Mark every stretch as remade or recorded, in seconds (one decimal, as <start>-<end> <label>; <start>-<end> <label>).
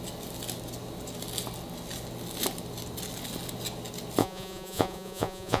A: 0.0-4.2 recorded; 4.2-5.6 remade